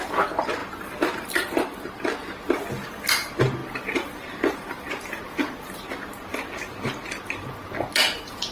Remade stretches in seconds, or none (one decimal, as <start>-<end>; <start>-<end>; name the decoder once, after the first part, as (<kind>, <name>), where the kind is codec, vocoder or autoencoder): none